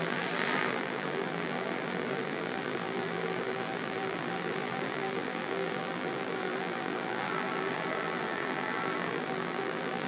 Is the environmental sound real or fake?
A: fake